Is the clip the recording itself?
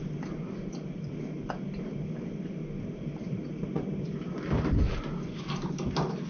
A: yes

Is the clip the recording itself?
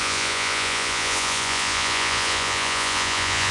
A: no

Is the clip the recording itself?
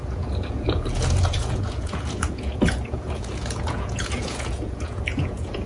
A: no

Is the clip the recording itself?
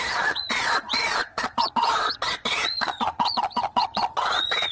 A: no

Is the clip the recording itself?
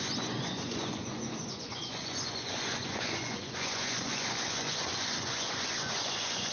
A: no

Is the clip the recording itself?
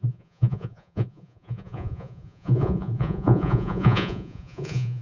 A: no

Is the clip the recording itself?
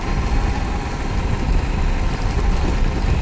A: yes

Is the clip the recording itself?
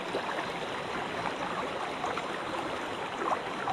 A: yes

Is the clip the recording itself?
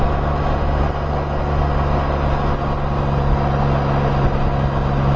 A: yes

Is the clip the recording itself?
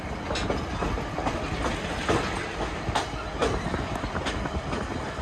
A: yes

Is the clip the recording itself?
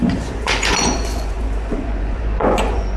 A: no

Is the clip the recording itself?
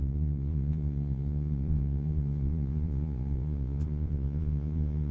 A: no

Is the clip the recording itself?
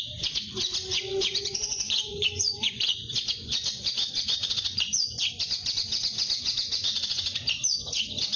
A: no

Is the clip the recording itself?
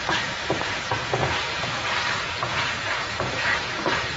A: no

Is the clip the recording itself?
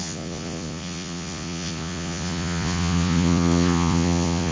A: no